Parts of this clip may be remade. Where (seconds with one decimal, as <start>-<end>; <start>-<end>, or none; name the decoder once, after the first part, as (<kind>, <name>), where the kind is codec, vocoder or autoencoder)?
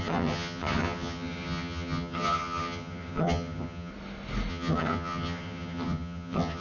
0.0-3.9 (vocoder, HiFi-GAN); 4.5-6.6